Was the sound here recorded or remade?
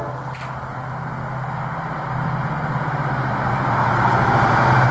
recorded